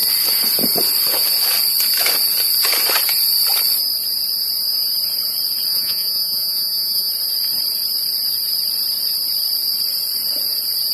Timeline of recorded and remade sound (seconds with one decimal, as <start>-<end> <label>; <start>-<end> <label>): 0.0-5.7 recorded; 5.7-7.1 remade; 7.1-10.9 recorded